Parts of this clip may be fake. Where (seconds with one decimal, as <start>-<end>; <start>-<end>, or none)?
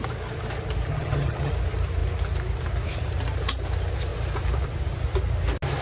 0.9-1.5